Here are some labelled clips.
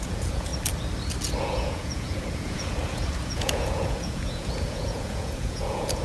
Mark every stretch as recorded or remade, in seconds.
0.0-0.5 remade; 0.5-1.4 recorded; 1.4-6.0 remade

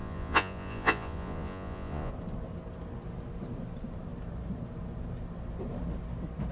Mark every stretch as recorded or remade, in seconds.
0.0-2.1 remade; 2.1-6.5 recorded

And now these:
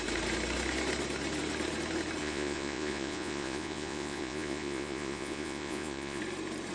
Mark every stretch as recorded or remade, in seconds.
0.0-2.2 recorded; 2.2-6.2 remade; 6.2-6.7 recorded

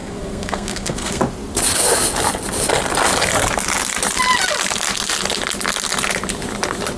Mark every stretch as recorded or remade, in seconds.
0.0-1.2 remade; 1.2-7.0 recorded